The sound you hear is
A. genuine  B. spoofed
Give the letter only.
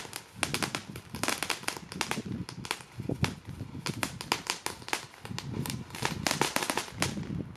A